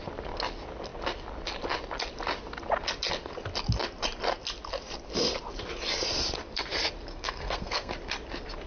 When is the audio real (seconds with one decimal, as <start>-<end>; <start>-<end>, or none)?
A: 0.0-7.1; 7.9-8.7